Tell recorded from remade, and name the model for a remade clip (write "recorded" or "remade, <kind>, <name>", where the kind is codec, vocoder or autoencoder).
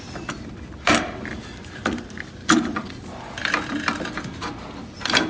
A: remade, vocoder, BigVGAN v2